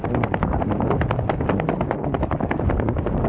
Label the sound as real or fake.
real